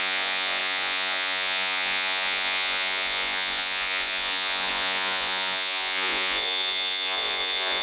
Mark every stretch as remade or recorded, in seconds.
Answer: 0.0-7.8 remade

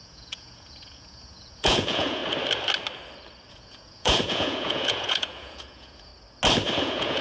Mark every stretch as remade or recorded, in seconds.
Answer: 0.0-2.2 remade; 2.2-3.5 recorded; 3.5-6.1 remade; 6.1-6.8 recorded; 6.8-7.2 remade

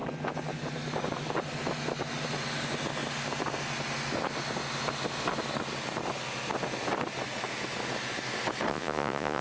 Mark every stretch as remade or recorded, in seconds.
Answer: 0.0-8.7 recorded; 8.7-9.4 remade

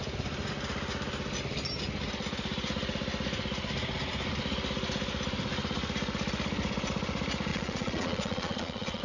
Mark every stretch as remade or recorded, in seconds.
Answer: 0.0-7.5 recorded; 7.5-9.0 remade

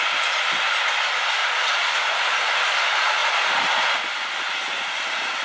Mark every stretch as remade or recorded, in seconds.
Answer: 0.0-1.4 recorded; 1.4-2.5 remade; 2.5-3.2 recorded; 3.2-3.8 remade; 3.8-5.4 recorded

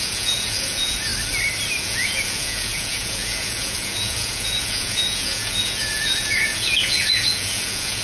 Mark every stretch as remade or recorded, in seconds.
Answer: 0.0-1.1 remade; 1.1-1.8 recorded; 1.8-8.0 remade